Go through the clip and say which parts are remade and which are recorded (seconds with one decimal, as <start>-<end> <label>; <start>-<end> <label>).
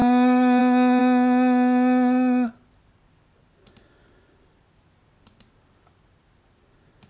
0.0-0.6 remade; 0.6-7.1 recorded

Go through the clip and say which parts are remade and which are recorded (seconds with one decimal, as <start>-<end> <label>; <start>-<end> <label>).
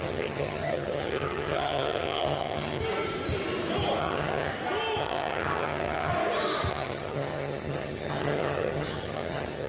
0.0-2.8 remade; 2.8-4.0 recorded; 4.0-4.5 remade; 4.5-5.0 recorded; 5.0-6.1 remade; 6.1-6.7 recorded; 6.7-9.7 remade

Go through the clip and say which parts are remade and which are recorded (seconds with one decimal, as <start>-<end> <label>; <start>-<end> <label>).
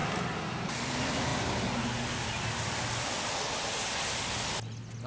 0.0-5.1 recorded